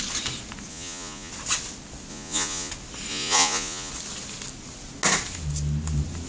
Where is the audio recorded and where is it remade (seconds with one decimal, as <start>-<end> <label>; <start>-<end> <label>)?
0.0-0.7 recorded; 0.7-1.3 remade; 1.3-2.1 recorded; 2.1-2.7 remade; 2.7-3.1 recorded; 3.1-3.9 remade; 3.9-6.3 recorded